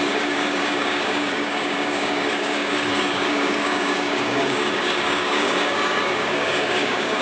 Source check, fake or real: fake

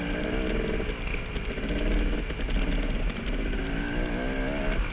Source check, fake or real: real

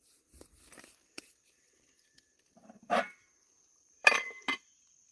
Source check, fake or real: fake